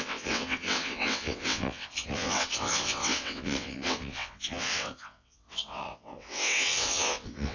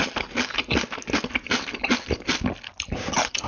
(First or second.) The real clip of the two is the second